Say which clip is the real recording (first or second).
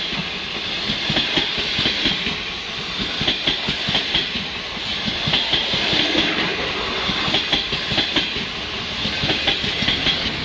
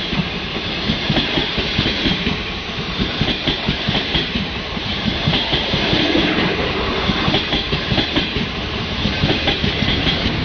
first